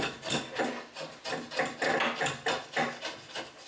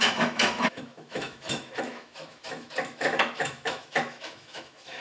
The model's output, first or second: second